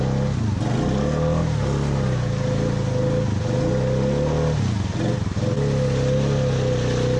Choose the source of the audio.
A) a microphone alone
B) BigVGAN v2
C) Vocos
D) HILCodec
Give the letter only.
A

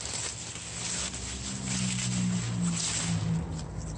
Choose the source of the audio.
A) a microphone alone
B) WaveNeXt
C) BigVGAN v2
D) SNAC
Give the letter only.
A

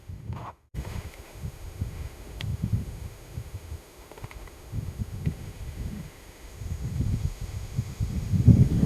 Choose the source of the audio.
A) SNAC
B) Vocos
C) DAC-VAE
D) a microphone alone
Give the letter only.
C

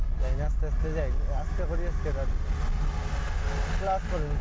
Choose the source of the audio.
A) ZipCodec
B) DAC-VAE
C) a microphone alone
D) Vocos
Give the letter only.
C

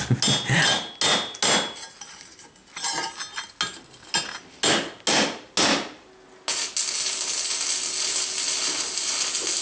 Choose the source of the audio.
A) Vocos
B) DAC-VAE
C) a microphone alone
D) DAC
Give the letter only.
C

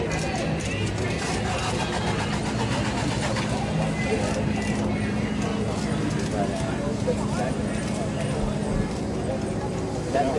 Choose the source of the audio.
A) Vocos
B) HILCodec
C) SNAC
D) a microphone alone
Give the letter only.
D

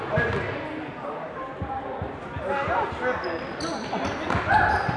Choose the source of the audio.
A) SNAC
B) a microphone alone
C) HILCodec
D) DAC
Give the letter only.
B